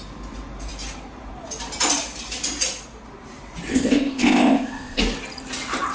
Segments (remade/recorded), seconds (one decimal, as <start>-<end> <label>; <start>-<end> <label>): 0.0-3.7 recorded; 3.7-5.0 remade; 5.0-5.9 recorded